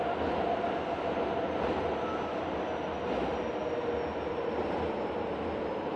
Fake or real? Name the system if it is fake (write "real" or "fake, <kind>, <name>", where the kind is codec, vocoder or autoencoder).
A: real